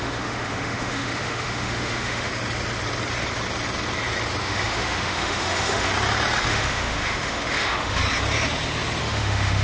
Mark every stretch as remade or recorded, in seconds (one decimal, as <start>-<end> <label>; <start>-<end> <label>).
0.0-2.3 remade; 2.3-4.4 recorded; 4.4-5.9 remade; 5.9-6.5 recorded; 6.5-8.0 remade; 8.0-9.0 recorded; 9.0-9.6 remade